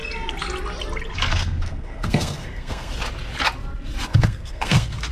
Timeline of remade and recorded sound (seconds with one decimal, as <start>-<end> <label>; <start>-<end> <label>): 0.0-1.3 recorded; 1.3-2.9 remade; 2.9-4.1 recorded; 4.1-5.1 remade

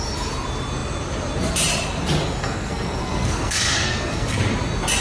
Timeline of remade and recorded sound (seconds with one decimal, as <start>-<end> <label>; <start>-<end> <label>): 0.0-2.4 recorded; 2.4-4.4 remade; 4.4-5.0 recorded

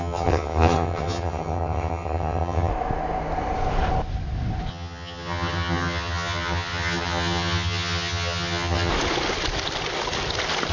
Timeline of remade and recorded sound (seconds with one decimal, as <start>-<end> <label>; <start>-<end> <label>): 0.0-2.7 remade; 2.7-4.7 recorded; 4.7-8.9 remade; 8.9-10.7 recorded

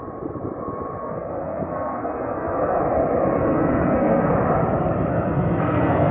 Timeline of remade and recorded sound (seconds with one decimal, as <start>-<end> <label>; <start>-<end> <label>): 0.0-1.0 recorded; 1.0-2.8 remade; 2.8-3.4 recorded; 3.4-4.3 remade; 4.3-5.1 recorded; 5.1-6.1 remade

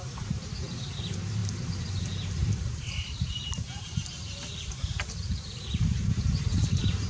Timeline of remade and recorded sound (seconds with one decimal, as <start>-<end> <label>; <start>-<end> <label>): 0.0-7.1 remade

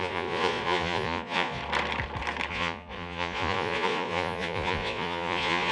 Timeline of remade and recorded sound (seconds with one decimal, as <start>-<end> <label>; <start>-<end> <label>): 0.0-1.6 remade; 1.6-2.5 recorded; 2.5-5.7 remade

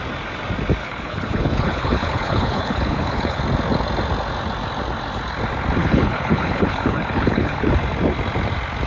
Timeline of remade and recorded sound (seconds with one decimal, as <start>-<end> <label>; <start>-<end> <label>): 0.0-0.8 recorded; 0.8-3.4 remade; 3.4-5.8 recorded; 5.8-7.7 remade; 7.7-8.9 recorded

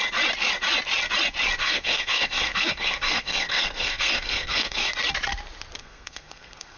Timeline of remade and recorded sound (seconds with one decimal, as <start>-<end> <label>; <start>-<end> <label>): 0.0-1.6 recorded; 1.6-4.9 remade; 4.9-5.8 recorded; 5.8-6.8 remade